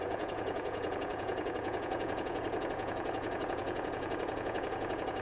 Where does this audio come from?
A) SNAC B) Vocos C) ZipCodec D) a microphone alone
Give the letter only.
B